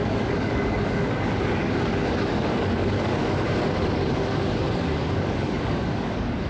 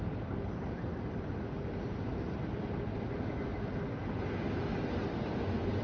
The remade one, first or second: first